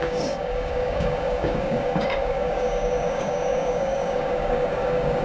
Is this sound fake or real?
fake